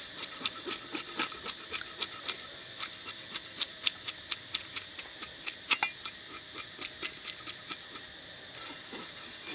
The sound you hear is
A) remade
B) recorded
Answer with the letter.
B